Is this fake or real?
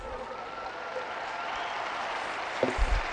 real